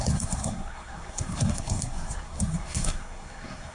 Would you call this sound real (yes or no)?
no